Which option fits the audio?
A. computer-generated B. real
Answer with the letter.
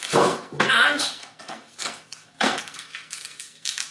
A